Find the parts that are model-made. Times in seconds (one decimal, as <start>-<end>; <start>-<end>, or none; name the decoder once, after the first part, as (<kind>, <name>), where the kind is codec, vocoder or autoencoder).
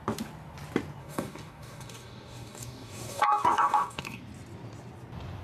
1.0-4.2 (codec, DAC)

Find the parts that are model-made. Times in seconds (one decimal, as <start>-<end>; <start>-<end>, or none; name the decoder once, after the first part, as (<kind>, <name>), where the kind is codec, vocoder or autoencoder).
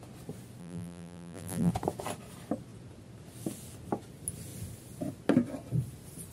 0.6-1.7 (vocoder, BigVGAN v2)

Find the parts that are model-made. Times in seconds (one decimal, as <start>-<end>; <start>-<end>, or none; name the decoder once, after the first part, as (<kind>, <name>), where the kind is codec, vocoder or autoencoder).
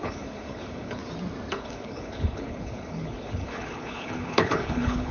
0.0-1.0 (codec, HILCodec); 1.5-5.1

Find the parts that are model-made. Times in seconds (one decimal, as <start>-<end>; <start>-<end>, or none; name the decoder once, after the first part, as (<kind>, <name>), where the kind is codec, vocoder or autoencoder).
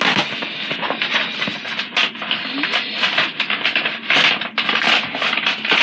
none